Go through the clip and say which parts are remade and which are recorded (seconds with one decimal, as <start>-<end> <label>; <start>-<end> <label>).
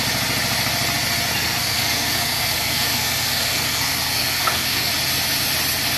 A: 0.0-1.3 recorded; 1.3-4.9 remade; 4.9-6.0 recorded